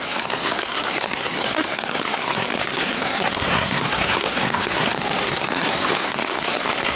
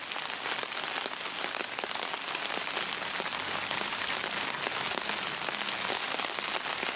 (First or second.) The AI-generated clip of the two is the first